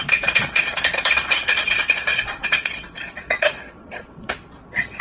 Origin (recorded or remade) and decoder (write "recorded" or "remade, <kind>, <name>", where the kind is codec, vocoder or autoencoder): remade, vocoder, Vocos